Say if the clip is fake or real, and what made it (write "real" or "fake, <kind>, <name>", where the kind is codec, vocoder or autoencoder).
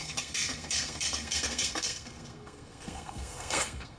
fake, codec, SNAC